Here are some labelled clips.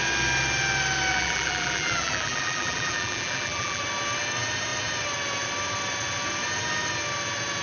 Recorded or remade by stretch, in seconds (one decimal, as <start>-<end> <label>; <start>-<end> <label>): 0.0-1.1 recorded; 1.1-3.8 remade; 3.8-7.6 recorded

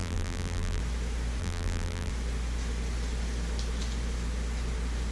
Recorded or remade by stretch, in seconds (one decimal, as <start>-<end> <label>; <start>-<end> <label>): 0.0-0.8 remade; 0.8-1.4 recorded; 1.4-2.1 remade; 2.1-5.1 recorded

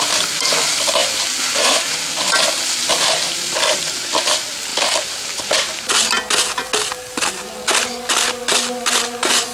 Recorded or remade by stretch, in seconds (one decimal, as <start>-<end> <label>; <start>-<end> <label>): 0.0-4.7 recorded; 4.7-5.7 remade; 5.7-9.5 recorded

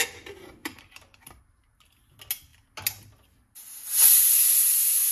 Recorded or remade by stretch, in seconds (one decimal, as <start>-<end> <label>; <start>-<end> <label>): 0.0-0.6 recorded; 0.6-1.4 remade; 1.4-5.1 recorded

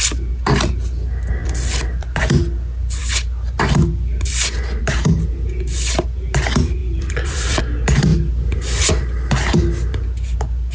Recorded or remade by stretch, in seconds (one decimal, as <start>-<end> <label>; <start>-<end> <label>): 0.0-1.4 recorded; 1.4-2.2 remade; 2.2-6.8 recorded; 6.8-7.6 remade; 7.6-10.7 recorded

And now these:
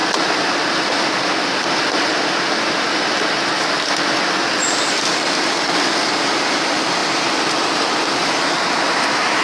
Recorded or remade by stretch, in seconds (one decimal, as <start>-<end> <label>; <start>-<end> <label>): 0.0-9.4 recorded

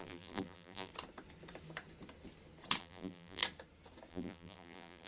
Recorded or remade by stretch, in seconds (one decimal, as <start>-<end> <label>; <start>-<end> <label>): 0.0-0.9 remade; 0.9-2.8 recorded; 2.8-3.4 remade; 3.4-4.1 recorded; 4.1-5.1 remade